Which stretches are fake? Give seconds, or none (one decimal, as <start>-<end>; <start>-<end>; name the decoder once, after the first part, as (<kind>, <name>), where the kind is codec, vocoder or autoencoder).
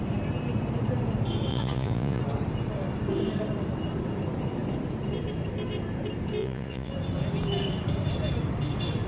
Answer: 1.5-2.2 (vocoder, Vocos); 6.4-6.9